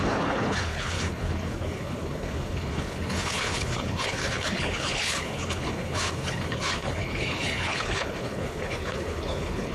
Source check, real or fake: fake